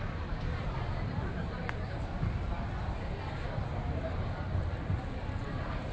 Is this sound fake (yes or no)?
no